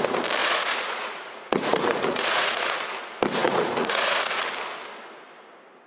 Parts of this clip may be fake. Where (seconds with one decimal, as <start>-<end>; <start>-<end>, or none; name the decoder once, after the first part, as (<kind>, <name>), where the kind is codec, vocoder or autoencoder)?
0.4-2.8 (vocoder, Vocos); 3.4-4.4